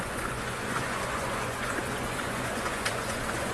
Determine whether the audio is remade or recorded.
remade